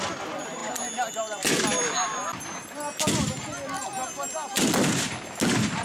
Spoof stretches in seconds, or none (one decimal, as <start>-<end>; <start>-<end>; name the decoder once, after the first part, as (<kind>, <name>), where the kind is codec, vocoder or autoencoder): none